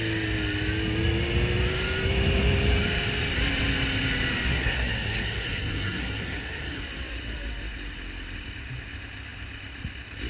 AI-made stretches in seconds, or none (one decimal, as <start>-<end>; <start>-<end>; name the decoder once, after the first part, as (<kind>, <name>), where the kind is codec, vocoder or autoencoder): 4.5-6.8 (codec, SNAC)